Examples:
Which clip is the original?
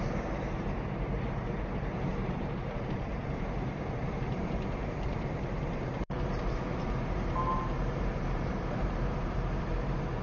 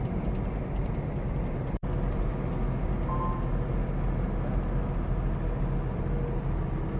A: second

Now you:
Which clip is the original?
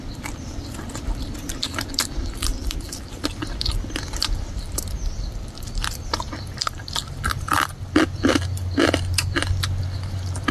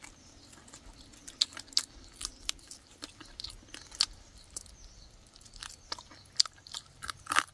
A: second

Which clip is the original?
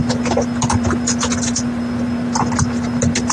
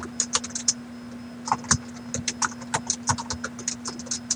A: second